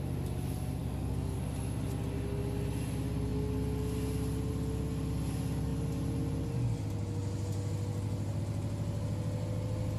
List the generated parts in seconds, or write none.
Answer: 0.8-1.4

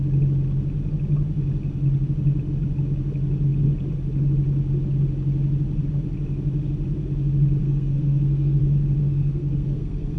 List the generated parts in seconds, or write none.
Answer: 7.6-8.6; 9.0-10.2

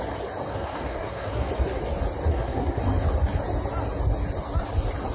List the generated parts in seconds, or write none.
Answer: 0.5-1.5; 2.3-2.8

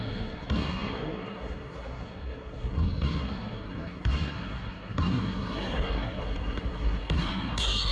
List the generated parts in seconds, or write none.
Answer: 0.0-7.9